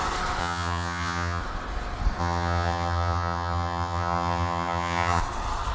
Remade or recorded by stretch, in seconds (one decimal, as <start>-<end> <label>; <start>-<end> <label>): 0.0-0.4 recorded; 0.4-1.4 remade; 1.4-2.2 recorded; 2.2-5.2 remade; 5.2-5.7 recorded